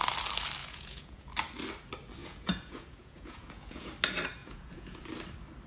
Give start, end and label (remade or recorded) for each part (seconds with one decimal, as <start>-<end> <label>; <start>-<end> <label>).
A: 0.0-0.6 recorded; 0.6-1.3 remade; 1.3-2.2 recorded; 2.2-3.9 remade; 3.9-4.4 recorded; 4.4-5.0 remade; 5.0-5.7 recorded

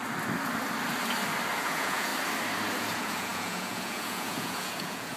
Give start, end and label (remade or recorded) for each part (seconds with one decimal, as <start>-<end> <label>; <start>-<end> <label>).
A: 0.0-1.6 recorded; 1.6-2.1 remade; 2.1-2.8 recorded; 2.8-5.2 remade

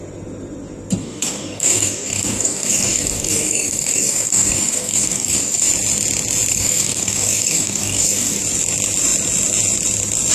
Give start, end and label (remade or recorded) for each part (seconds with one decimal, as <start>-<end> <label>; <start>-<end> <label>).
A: 0.0-1.0 recorded; 1.0-5.7 remade; 5.7-6.5 recorded; 6.5-8.4 remade; 8.4-10.3 recorded

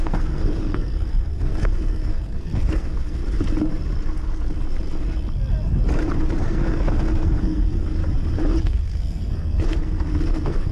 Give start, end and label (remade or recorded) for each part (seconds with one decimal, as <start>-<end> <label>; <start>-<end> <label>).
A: 0.0-3.2 remade; 3.2-6.4 recorded; 6.4-8.0 remade; 8.0-8.6 recorded; 8.6-10.7 remade

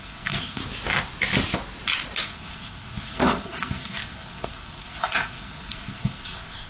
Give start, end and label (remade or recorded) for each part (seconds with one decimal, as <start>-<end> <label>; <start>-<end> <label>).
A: 0.0-0.6 remade; 0.6-2.2 recorded; 2.2-6.7 remade

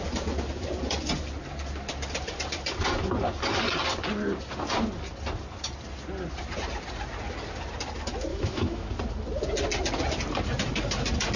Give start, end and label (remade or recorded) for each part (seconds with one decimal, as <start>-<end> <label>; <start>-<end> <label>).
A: 0.0-8.3 recorded; 8.3-8.9 remade; 8.9-11.4 recorded

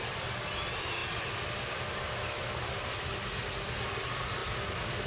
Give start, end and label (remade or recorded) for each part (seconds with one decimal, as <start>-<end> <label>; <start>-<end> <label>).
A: 0.0-5.1 recorded